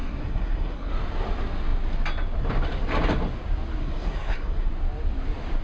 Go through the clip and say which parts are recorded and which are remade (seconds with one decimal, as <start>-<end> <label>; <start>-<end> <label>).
0.0-0.9 remade; 0.9-3.8 recorded; 3.8-4.7 remade; 4.7-5.6 recorded